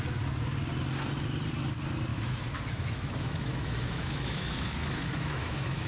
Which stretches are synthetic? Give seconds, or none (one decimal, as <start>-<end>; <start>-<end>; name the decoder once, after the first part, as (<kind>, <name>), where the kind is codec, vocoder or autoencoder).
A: 2.1-5.9 (autoencoder, DAC-VAE)